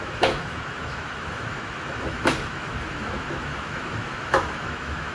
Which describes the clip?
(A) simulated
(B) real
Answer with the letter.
A